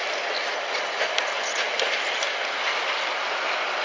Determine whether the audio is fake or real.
real